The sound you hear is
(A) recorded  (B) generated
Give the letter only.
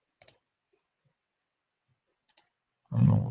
B